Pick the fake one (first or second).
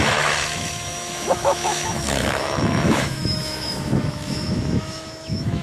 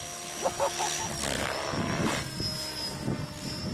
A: first